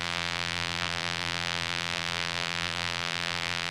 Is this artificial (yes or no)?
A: yes